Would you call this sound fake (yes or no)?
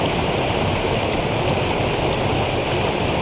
no